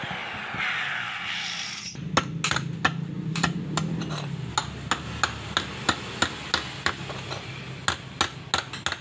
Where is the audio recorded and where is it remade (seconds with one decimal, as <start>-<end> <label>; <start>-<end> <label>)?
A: 0.0-9.0 recorded